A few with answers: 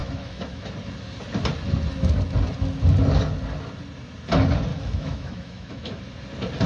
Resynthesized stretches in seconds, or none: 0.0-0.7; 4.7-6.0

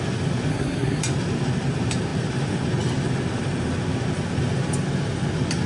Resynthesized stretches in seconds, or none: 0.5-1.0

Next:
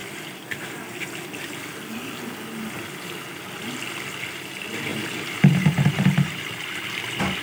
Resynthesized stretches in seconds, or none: 4.9-6.6

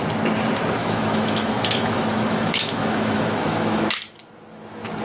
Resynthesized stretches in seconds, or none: 0.8-3.8